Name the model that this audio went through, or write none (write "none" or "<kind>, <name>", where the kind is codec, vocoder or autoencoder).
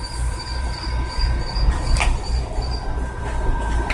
vocoder, BigVGAN v2